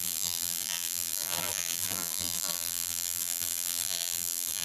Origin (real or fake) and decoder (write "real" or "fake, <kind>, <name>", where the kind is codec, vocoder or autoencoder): fake, vocoder, BigVGAN v2